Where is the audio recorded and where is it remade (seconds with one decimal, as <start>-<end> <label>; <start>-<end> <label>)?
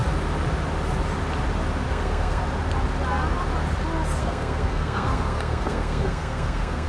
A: 0.0-1.9 recorded; 1.9-2.4 remade; 2.4-4.2 recorded; 4.2-6.9 remade